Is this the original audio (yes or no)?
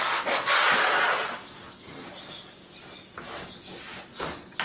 yes